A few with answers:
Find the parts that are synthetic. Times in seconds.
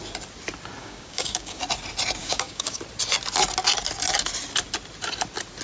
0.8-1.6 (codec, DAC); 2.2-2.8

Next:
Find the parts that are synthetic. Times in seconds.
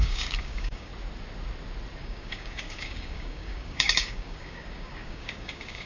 0.0-0.9 (codec, DAC); 2.0-5.9